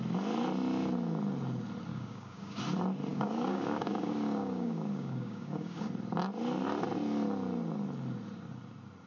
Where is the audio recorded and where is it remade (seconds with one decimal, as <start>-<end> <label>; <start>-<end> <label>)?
0.0-1.9 recorded; 1.9-2.6 remade; 2.6-3.1 recorded; 3.1-5.9 remade; 5.9-9.1 recorded